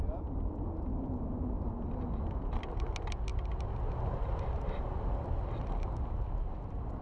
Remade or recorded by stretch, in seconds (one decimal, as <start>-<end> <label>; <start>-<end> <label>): 0.0-7.0 recorded